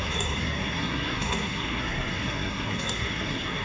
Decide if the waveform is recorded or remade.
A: remade